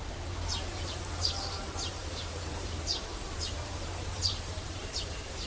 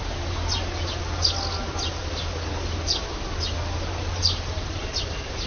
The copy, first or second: first